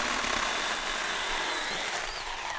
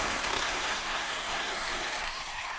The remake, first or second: second